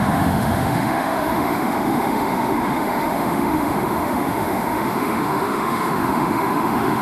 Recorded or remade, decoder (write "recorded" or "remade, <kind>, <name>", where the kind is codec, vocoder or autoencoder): remade, autoencoder, DAC-VAE